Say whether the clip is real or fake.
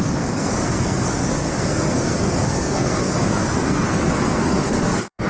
fake